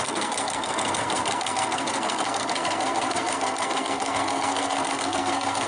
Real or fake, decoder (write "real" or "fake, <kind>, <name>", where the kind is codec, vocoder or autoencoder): fake, codec, SNAC